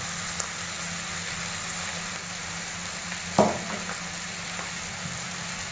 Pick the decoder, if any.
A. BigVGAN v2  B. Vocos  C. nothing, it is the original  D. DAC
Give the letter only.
C